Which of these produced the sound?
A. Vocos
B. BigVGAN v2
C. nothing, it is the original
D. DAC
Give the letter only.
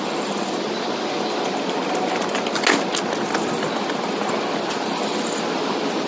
C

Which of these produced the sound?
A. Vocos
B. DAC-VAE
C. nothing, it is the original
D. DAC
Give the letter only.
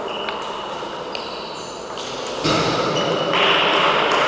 C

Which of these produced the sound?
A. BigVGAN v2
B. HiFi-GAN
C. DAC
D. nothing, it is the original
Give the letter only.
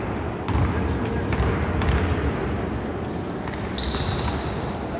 D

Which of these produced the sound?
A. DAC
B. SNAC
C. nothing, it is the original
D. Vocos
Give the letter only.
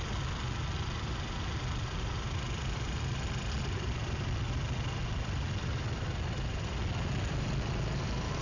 C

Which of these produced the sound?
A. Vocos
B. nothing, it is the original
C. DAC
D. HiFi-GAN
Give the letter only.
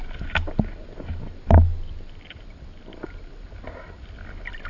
B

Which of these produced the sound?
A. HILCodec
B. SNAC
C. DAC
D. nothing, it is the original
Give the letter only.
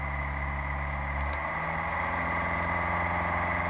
D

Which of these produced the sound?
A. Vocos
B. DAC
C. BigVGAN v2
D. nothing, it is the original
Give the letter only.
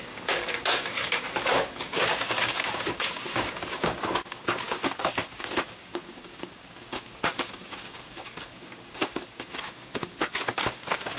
B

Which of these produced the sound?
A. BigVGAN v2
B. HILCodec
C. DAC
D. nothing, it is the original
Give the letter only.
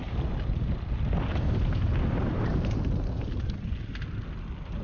D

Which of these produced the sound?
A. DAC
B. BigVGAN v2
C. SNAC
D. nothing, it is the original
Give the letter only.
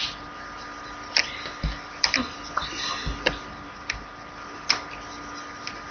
D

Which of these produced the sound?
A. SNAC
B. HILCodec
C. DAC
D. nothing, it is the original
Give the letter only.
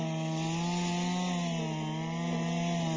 D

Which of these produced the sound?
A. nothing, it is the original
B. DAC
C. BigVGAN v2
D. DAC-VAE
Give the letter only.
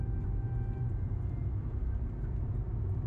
A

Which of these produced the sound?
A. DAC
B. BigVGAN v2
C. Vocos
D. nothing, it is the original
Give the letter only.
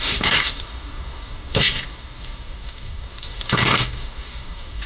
A